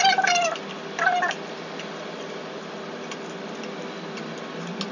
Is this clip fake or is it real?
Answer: real